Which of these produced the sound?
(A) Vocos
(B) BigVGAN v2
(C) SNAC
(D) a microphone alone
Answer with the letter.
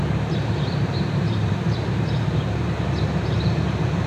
B